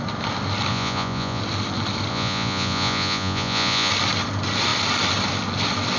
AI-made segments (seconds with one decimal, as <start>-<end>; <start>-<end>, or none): 0.7-1.4; 2.1-3.9